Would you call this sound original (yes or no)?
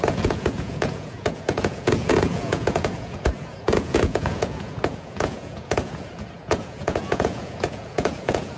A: no